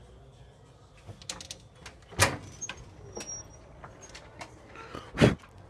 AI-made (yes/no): no